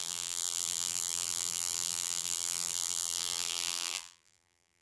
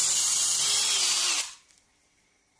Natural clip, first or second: second